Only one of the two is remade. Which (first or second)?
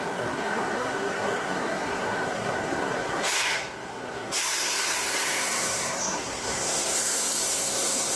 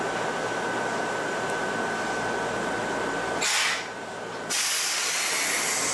first